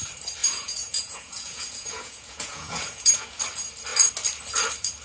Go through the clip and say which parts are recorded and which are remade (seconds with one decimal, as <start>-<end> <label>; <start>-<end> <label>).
0.0-0.4 recorded; 0.4-3.4 remade; 3.4-5.0 recorded